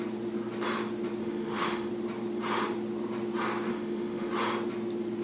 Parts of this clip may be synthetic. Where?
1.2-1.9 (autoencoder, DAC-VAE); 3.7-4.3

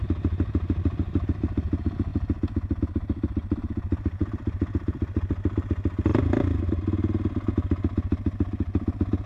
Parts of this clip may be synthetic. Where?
0.0-1.1 (vocoder, BigVGAN v2); 4.2-5.2

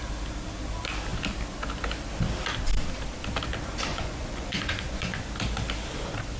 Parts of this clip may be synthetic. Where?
3.9-5.3 (vocoder, Vocos)

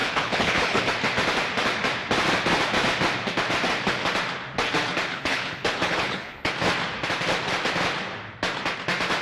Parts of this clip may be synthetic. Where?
0.0-0.8 (codec, HILCodec); 5.1-6.5

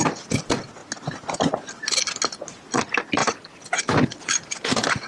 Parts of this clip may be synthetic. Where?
3.2-4.3 (vocoder, BigVGAN v2)

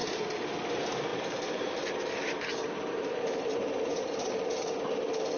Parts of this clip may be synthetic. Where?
0.0-0.7 (vocoder, BigVGAN v2); 1.1-4.3